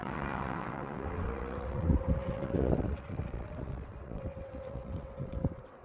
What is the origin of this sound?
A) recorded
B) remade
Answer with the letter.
B